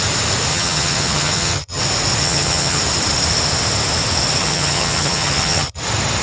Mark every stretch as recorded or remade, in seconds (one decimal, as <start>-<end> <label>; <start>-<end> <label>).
0.0-0.5 recorded; 0.5-1.8 remade; 1.8-2.2 recorded; 2.2-2.8 remade; 2.8-4.4 recorded; 4.4-5.8 remade; 5.8-6.2 recorded